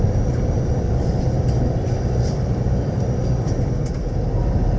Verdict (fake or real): real